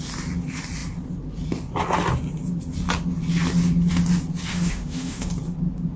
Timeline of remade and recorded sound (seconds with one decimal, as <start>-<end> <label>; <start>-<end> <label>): 0.0-4.5 recorded; 4.5-5.3 remade; 5.3-6.0 recorded